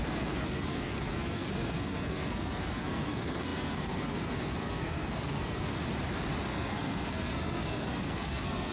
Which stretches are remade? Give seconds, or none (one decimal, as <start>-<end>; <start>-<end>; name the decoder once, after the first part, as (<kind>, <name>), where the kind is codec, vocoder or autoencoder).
0.0-5.7 (codec, SNAC); 6.5-8.7